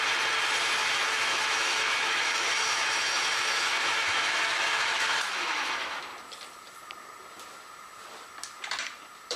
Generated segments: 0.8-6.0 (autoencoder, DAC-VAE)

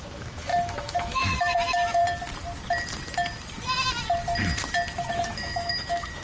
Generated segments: 0.0-2.0 (autoencoder, DAC-VAE); 5.1-6.2

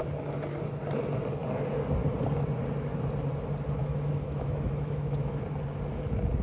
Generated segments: 3.8-5.4 (autoencoder, DAC-VAE)